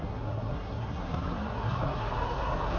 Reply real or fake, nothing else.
fake